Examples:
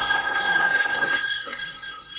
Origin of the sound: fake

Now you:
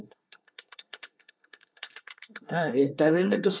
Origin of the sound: fake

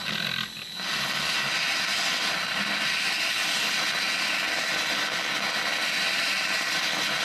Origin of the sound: real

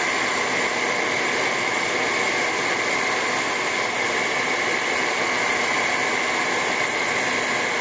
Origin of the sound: real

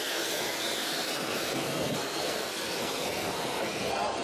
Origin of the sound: fake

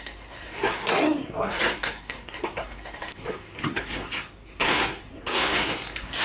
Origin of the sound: fake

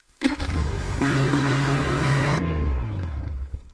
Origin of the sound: fake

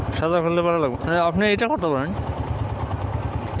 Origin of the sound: real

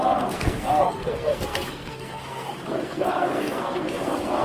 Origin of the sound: fake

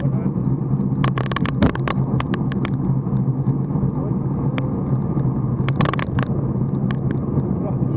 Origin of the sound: real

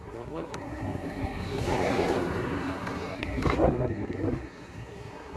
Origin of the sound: fake